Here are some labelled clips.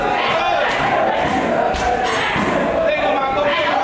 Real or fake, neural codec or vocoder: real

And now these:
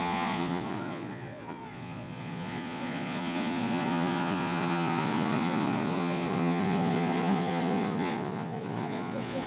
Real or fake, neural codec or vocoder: fake, vocoder, Vocos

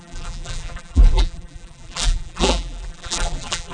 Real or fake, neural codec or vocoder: fake, vocoder, BigVGAN v2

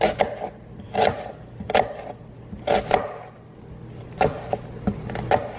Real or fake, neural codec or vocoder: real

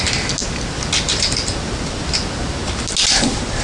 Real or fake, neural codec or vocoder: real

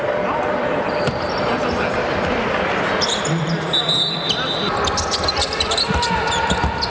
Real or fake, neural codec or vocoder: real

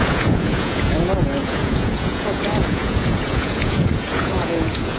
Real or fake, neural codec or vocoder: fake, vocoder, Vocos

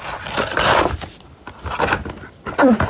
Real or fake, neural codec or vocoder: real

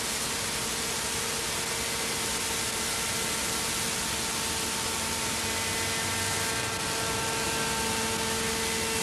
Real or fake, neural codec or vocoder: real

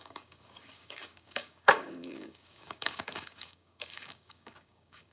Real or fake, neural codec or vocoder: fake, codec, DAC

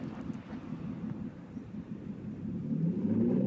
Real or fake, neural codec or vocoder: real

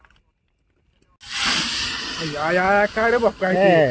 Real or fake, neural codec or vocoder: real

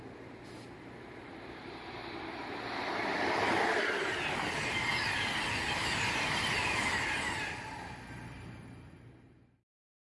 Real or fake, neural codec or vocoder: real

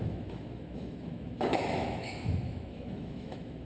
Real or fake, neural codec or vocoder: fake, autoencoder, DAC-VAE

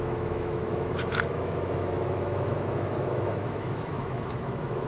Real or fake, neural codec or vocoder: fake, autoencoder, DAC-VAE